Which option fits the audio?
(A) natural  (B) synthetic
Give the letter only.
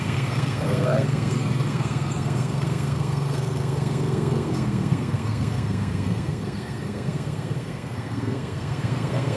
B